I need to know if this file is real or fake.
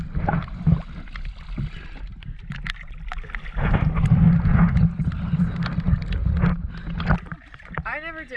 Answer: real